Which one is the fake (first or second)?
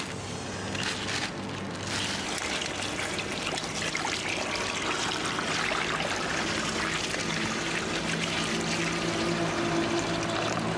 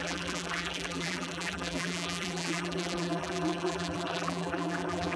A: second